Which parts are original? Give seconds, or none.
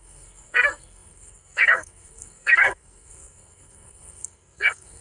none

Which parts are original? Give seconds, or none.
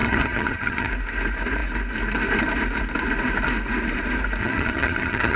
0.9-4.4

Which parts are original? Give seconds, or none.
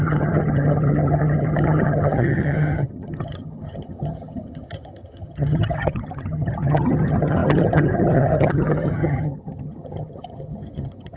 none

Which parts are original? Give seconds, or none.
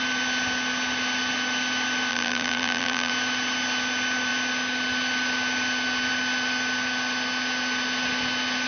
0.0-2.1; 3.1-8.7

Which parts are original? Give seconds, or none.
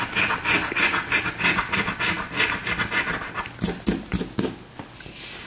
0.0-4.1; 5.1-5.5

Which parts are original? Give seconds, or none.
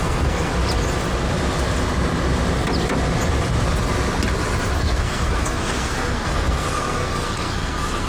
0.5-4.8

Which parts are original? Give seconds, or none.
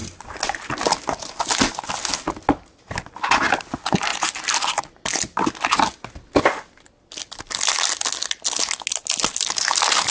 0.0-10.1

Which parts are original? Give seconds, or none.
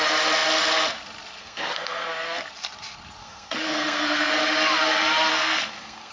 0.0-1.4; 2.1-3.2; 4.3-5.3